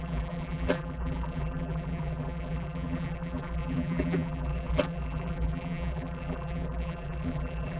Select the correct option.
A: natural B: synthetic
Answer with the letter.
B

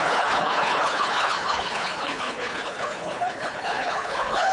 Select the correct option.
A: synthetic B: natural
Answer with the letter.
A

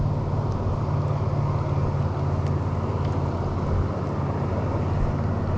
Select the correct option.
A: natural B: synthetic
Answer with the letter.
A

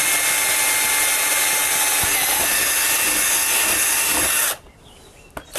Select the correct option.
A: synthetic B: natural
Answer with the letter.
B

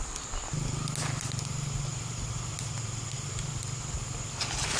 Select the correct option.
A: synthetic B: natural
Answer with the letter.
B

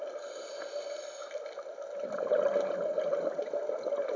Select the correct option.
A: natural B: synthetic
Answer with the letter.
A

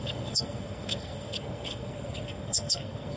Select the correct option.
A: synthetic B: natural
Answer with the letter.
A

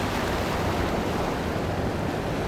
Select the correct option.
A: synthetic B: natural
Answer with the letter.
B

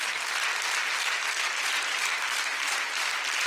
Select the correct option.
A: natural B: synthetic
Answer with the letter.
A